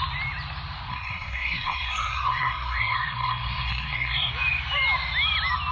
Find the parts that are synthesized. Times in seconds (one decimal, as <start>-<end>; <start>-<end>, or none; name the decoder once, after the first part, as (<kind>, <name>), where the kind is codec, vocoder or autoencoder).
0.9-4.3 (codec, SNAC)